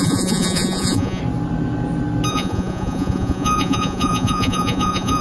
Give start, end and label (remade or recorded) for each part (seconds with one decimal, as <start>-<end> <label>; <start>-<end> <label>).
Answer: 0.0-1.2 remade; 1.2-2.3 recorded; 2.3-5.2 remade